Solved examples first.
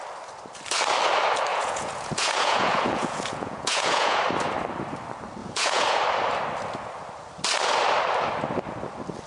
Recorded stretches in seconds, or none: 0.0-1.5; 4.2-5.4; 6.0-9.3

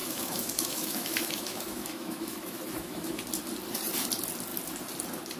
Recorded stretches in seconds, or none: 3.2-5.4

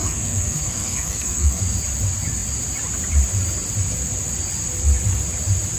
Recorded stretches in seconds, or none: 1.6-5.8